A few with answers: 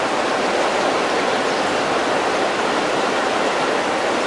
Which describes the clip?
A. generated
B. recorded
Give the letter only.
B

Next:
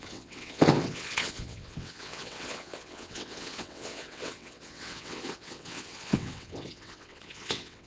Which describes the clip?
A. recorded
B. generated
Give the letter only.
B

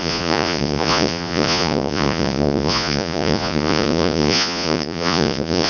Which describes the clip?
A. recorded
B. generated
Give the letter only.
B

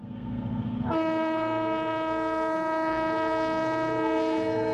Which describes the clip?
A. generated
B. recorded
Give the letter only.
A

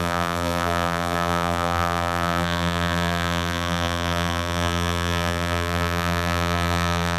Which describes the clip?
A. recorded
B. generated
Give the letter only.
B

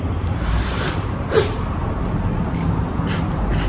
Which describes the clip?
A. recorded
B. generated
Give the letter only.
B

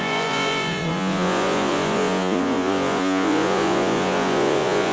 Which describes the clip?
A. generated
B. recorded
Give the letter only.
A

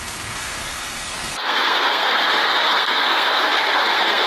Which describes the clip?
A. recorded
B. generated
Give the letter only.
B